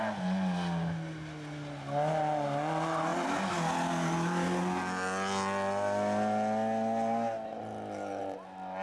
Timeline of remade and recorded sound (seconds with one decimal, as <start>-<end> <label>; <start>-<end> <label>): 0.0-8.8 recorded